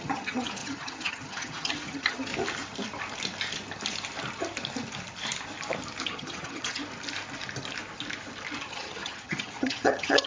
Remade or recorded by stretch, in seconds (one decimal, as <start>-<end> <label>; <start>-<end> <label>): 0.0-2.3 remade; 2.3-6.0 recorded; 6.0-6.8 remade; 6.8-8.7 recorded; 8.7-10.3 remade